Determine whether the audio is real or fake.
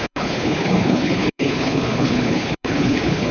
fake